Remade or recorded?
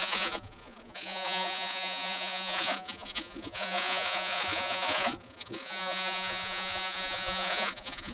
remade